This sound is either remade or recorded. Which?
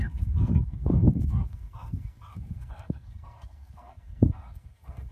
remade